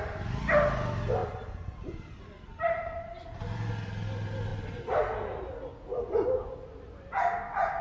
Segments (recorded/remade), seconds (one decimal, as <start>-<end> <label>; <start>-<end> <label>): 0.0-7.8 recorded